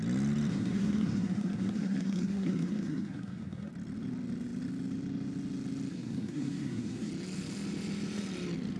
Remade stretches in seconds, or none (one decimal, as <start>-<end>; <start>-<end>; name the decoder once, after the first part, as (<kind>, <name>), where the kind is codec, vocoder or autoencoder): 0.5-3.7 (codec, SNAC); 5.9-7.1